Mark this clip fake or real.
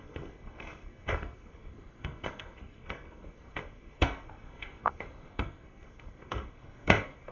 fake